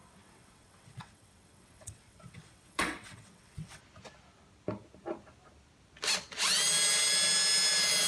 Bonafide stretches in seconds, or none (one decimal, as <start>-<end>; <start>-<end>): 3.8-8.1